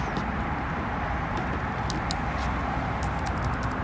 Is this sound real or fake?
real